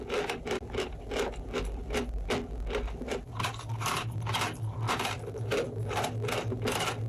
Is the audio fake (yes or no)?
no